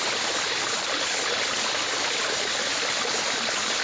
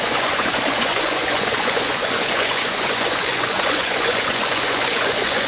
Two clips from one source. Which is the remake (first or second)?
second